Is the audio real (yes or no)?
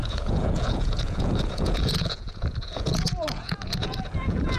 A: no